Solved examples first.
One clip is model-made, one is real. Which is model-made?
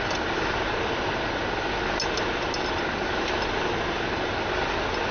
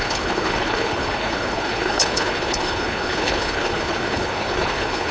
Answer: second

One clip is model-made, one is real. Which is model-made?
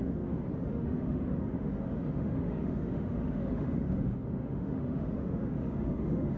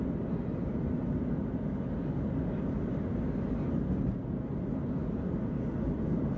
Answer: first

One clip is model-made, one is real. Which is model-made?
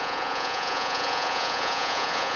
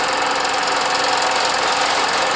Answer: first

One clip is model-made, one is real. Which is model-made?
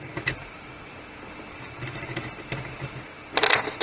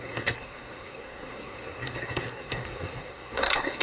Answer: second